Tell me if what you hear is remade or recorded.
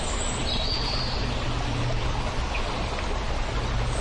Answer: recorded